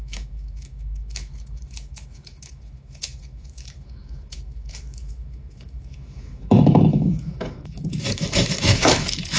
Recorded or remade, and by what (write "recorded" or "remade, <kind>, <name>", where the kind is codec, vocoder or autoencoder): remade, autoencoder, DAC-VAE